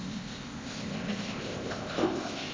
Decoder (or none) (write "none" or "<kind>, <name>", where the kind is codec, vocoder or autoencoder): codec, ZipCodec